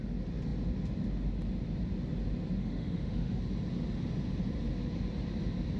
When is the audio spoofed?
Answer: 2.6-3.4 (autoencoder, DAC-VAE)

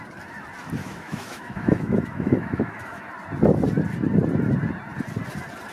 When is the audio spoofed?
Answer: 0.8-3.1 (autoencoder, DAC-VAE)

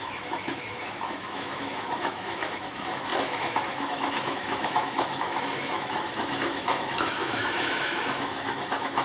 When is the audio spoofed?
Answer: 0.0-9.0 (autoencoder, DAC-VAE)

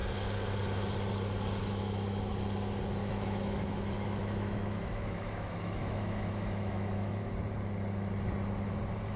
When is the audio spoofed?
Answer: 1.6-2.3 (autoencoder, DAC-VAE); 3.0-7.3